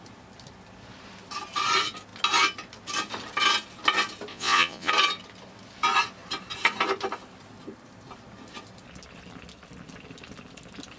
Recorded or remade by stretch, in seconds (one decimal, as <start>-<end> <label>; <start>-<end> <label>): 0.0-4.3 recorded; 4.3-4.9 remade; 4.9-11.0 recorded